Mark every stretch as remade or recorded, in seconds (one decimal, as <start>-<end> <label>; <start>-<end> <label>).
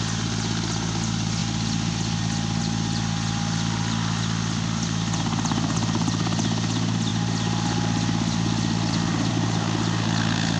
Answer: 0.0-10.6 recorded